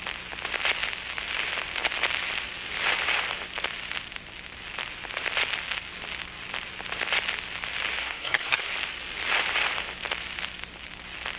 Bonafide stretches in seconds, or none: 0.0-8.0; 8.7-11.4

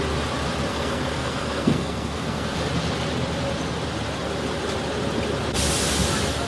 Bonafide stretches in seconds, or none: 0.0-0.7; 2.7-6.5

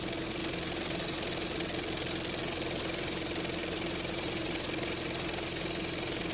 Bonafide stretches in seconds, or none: 0.0-6.3

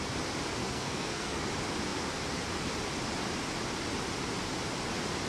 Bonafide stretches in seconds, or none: 0.0-0.6; 1.5-5.3

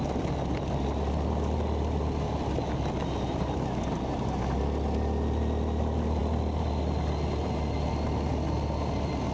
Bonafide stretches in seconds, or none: 0.0-9.3

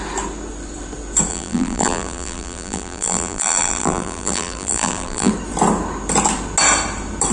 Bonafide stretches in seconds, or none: 0.0-1.3; 5.3-7.3

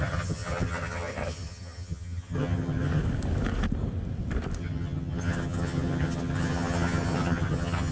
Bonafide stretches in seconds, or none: 3.0-4.6

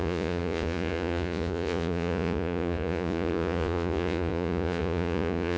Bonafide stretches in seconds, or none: none